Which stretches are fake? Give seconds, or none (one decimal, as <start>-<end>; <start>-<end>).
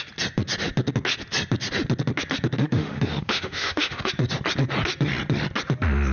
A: 2.6-4.1